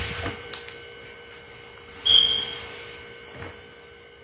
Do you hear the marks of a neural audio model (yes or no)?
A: yes